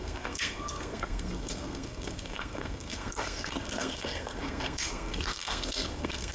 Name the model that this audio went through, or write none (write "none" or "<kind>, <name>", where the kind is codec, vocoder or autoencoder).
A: codec, SNAC